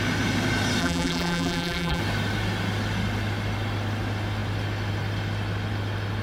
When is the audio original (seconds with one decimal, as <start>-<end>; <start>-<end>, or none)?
0.0-0.8; 2.0-6.2